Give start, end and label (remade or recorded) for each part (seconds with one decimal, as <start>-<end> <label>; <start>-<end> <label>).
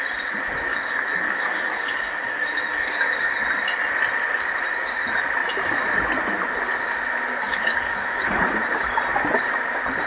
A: 0.0-0.7 recorded; 0.7-3.4 remade; 3.4-7.3 recorded; 7.3-8.4 remade; 8.4-10.1 recorded